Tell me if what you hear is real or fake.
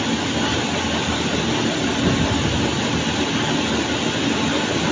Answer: real